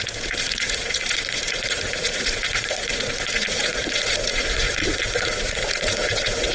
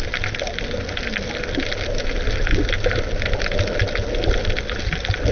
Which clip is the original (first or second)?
second